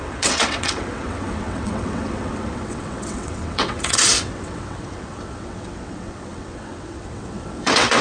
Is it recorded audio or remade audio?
remade